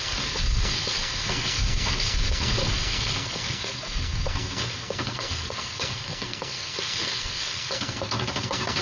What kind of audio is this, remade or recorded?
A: remade